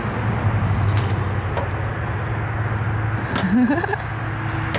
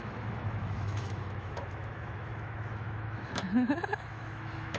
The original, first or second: first